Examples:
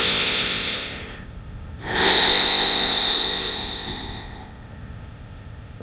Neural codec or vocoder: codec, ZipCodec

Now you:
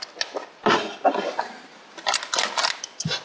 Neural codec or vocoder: none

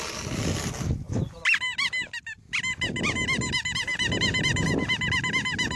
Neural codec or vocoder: none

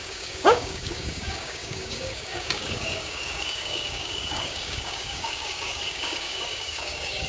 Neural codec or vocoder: codec, DAC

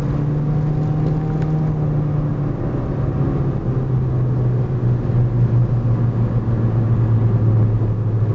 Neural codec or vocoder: none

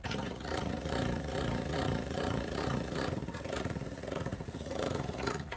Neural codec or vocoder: vocoder, Vocos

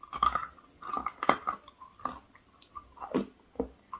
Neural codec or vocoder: none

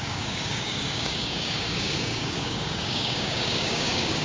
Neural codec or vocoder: codec, DAC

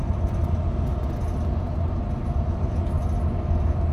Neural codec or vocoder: none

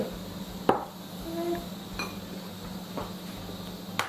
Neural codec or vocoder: none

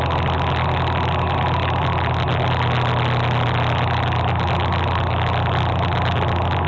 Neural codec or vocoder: none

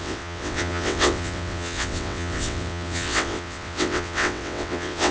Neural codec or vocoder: vocoder, WaveNeXt